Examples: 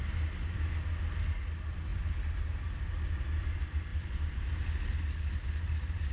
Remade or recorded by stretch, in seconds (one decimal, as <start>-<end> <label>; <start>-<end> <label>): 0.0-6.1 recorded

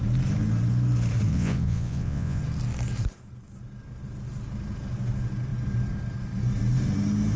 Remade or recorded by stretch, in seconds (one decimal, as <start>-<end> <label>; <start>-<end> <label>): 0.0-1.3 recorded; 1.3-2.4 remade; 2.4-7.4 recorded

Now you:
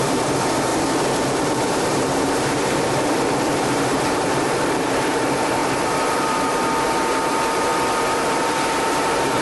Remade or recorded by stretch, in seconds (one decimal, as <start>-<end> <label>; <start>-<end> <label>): 0.0-0.7 remade; 0.7-1.4 recorded; 1.4-7.7 remade; 7.7-8.3 recorded; 8.3-9.4 remade